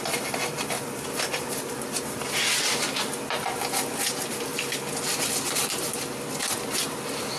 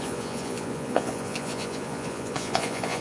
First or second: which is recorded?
first